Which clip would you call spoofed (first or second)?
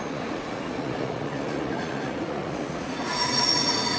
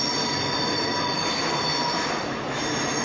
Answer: first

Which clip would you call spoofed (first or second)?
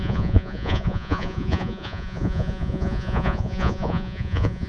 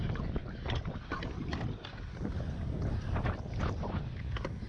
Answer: first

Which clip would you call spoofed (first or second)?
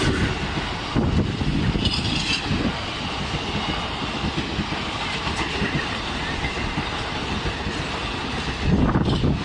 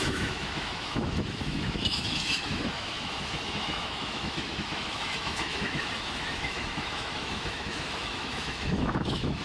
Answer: second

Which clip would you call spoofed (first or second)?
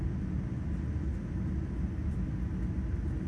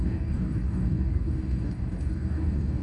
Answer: second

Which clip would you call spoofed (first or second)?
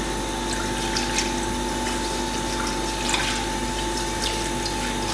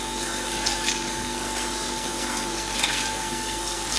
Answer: second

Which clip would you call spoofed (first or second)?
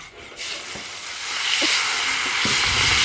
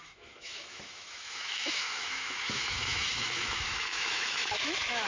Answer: second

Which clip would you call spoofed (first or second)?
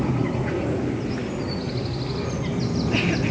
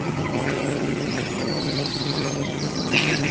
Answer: second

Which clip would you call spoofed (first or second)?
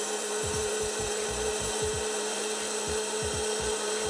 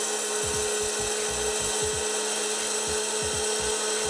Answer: first